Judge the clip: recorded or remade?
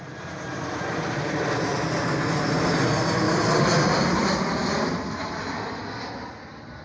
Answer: recorded